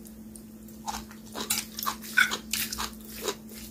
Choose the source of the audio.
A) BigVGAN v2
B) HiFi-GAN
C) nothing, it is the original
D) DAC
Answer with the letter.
C